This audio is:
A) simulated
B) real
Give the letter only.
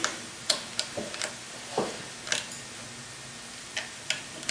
B